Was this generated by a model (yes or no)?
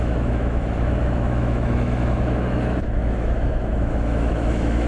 yes